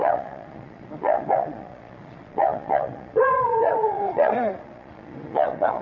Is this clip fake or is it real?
fake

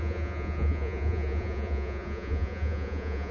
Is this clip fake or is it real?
fake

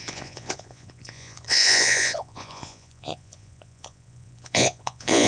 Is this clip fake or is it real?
fake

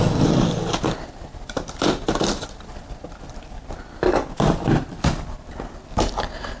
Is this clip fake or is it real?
real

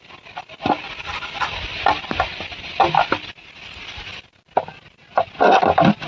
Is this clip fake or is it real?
real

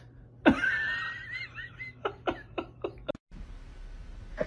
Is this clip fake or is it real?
real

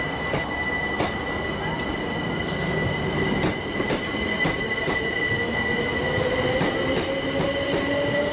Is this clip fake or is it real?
real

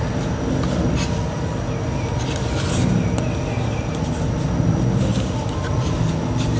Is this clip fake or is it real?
real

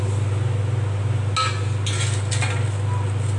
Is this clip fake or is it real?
real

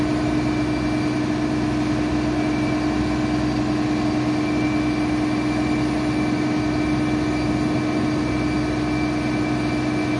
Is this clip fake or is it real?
real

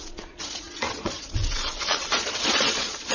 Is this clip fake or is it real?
fake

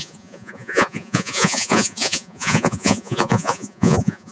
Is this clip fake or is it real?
fake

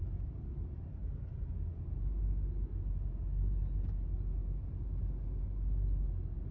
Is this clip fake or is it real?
real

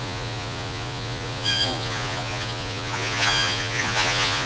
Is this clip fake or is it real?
fake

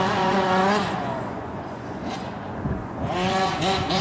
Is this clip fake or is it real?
fake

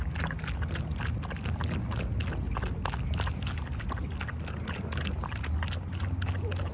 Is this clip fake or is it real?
real